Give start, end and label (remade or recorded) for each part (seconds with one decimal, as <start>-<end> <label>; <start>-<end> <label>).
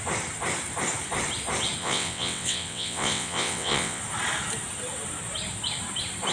0.0-1.8 recorded; 1.8-4.0 remade; 4.0-6.3 recorded